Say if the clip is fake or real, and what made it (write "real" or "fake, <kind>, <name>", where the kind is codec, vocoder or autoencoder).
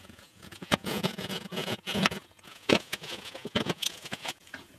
fake, vocoder, Vocos